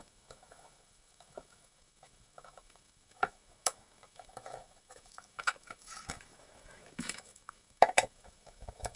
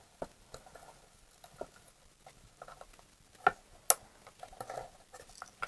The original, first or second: second